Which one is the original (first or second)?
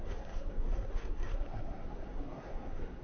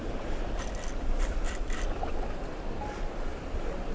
second